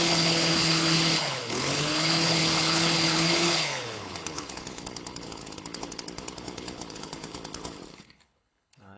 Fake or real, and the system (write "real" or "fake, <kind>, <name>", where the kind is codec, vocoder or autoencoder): fake, codec, HILCodec